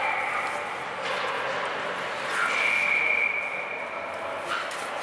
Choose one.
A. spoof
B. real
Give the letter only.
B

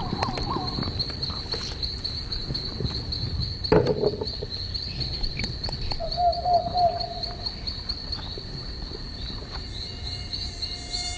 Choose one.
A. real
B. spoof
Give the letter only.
A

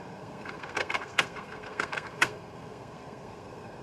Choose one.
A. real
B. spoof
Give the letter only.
B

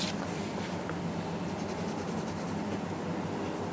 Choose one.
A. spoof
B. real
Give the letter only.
B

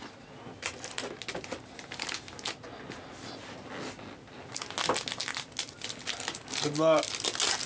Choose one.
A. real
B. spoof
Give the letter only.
A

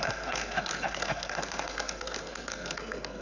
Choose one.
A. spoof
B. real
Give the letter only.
A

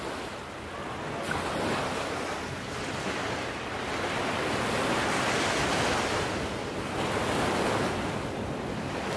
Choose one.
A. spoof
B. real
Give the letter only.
B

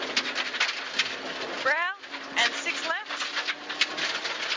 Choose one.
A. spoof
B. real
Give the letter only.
B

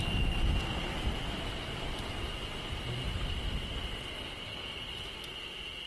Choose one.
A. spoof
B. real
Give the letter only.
B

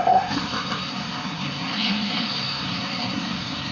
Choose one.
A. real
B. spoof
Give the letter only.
B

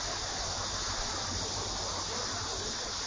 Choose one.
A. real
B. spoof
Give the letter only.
A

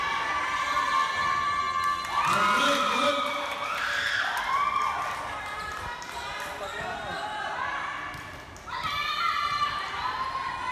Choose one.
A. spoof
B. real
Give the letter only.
B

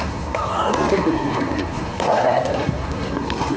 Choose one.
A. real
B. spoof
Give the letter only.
B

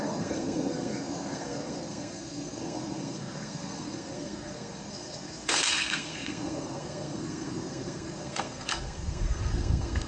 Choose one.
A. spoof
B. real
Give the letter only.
A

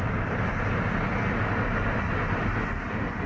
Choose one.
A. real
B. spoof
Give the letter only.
A